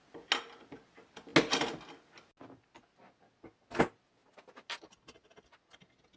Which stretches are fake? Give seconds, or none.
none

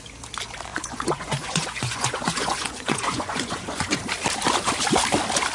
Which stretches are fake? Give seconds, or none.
0.7-4.0 (vocoder, Vocos)

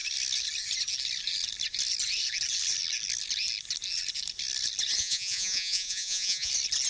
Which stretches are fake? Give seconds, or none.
5.0-6.5 (vocoder, Vocos)

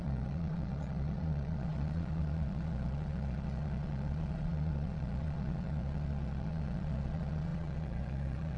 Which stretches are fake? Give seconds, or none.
0.0-8.6 (vocoder, Vocos)

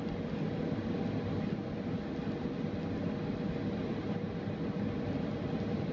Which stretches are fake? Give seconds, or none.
none

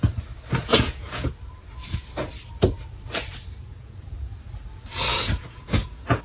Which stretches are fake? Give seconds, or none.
0.7-1.3 (vocoder, Vocos); 3.7-4.4; 5.1-6.2

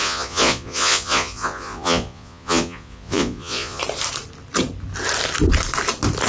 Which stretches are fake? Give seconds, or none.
0.0-3.8 (vocoder, Vocos)